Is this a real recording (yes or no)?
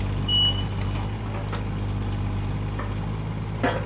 yes